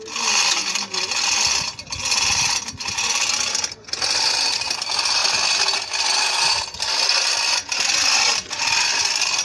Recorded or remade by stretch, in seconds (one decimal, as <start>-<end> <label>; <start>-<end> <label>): 0.0-9.4 recorded